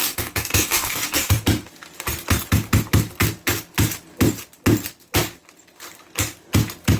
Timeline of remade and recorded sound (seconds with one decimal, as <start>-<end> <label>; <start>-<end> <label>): 0.0-1.3 remade; 1.3-7.0 recorded